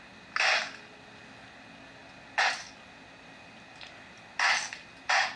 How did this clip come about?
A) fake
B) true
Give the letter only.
B